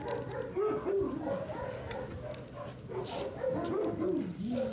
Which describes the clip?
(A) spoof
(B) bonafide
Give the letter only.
B